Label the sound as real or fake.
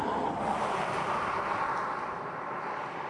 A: real